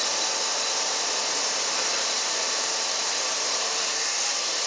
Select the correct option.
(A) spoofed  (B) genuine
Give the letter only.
A